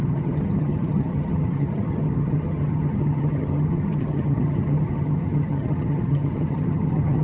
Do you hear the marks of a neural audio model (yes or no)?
yes